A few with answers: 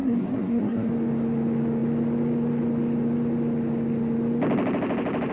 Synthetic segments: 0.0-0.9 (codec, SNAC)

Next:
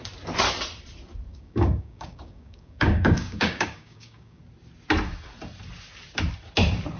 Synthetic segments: 1.3-4.4 (codec, DAC)

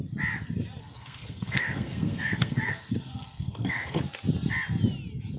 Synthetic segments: 0.8-4.0 (codec, SNAC)

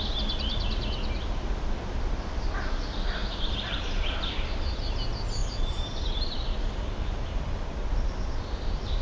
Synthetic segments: 3.2-4.3 (vocoder, BigVGAN v2); 5.4-6.6

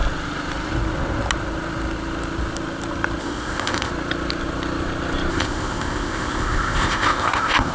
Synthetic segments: 3.2-3.9 (codec, ZipCodec); 5.3-7.7